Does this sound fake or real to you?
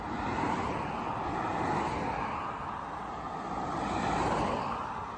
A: real